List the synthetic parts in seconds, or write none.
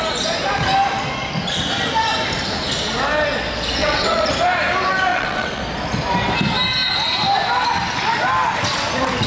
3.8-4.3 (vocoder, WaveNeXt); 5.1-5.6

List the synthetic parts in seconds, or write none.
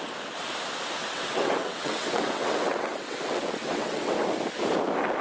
1.0-4.1 (vocoder, WaveNeXt)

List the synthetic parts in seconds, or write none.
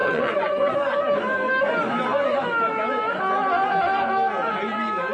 0.0-0.7 (vocoder, WaveNeXt)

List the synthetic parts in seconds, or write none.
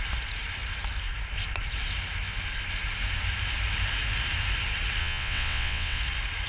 5.0-6.0 (vocoder, WaveNeXt)